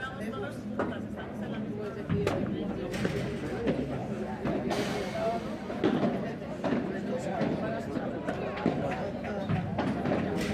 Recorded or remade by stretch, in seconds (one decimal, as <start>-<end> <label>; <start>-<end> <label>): 0.0-10.5 recorded